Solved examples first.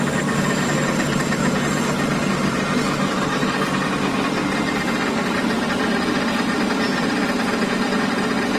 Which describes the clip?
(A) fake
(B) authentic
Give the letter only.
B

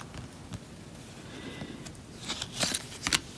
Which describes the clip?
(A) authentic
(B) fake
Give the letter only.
A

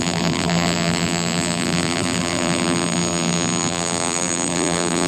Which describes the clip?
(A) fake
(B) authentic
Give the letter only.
A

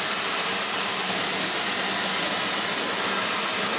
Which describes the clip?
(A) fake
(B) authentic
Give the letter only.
B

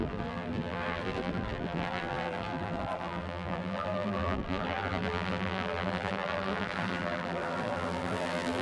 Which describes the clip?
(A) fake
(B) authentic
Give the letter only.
A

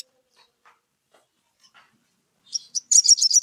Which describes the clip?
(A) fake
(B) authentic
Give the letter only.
A